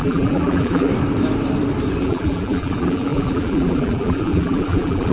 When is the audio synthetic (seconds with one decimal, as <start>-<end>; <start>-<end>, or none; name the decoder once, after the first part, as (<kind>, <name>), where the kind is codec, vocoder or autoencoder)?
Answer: 0.0-0.9 (vocoder, BigVGAN v2); 2.0-5.1